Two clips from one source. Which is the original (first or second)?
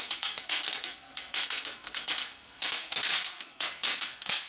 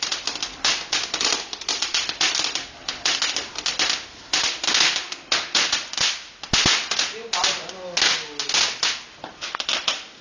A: second